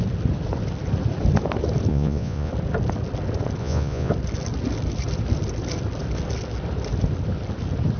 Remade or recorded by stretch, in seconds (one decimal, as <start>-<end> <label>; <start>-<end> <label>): 0.0-1.9 recorded; 1.9-2.5 remade; 2.5-3.6 recorded; 3.6-4.1 remade; 4.1-8.0 recorded